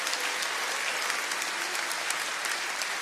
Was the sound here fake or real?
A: real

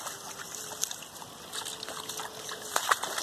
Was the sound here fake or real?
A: real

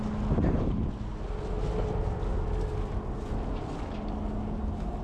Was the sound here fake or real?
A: real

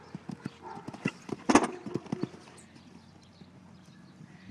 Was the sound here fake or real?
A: real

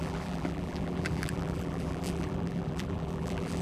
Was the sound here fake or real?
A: fake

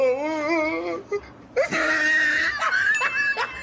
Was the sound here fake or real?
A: real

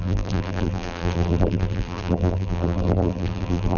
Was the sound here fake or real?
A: fake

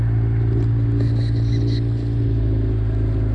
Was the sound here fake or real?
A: real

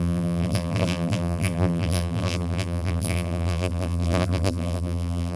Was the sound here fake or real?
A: fake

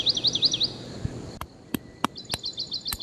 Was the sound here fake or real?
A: real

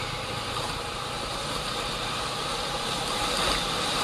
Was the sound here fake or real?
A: fake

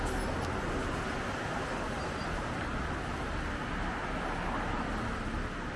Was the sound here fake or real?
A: real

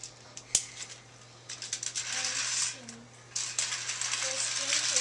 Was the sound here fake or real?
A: real